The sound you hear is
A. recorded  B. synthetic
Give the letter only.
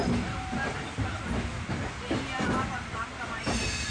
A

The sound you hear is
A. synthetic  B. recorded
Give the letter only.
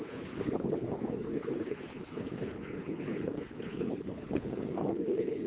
A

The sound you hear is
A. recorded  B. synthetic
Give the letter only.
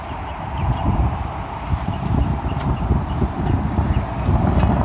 B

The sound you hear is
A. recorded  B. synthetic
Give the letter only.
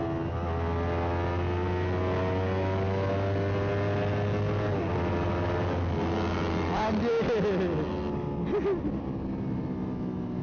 A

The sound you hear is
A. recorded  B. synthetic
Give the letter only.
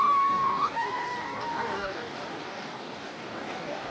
B